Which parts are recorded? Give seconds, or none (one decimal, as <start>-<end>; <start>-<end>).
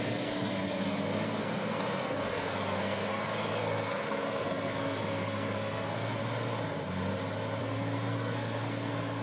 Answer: 6.2-7.6